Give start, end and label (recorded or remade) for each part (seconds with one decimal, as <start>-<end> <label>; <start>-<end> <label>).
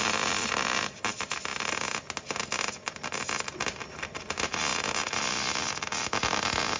0.0-6.8 recorded